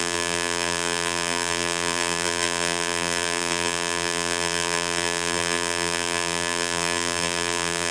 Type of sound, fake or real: fake